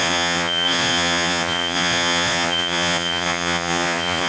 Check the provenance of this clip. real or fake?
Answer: fake